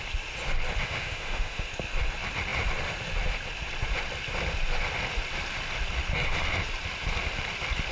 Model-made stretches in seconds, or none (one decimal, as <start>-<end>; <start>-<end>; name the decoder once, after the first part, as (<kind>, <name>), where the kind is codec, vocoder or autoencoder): 0.8-1.7 (autoencoder, DAC-VAE)